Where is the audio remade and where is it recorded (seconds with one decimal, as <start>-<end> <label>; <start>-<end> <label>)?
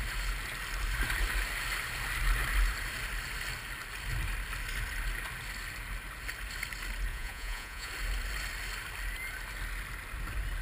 0.0-7.1 recorded; 7.1-7.9 remade; 7.9-10.6 recorded